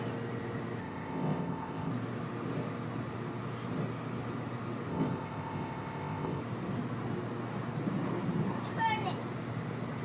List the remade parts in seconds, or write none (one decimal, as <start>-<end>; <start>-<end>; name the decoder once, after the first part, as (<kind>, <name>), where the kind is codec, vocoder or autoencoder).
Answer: 0.8-1.9 (codec, ZipCodec); 4.9-6.4